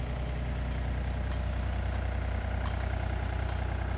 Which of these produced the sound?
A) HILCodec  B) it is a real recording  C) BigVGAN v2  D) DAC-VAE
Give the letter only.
B